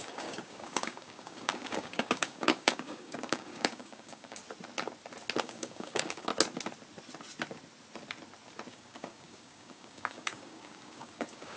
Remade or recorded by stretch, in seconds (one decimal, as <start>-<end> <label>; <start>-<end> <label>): 0.0-4.4 remade; 4.4-5.4 recorded; 5.4-6.3 remade; 6.3-8.7 recorded; 8.7-11.6 remade